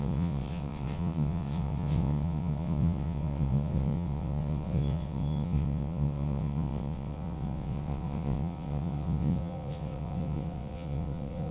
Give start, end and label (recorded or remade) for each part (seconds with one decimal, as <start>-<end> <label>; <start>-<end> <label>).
0.0-11.5 remade